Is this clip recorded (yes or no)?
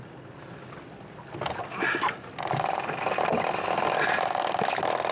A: yes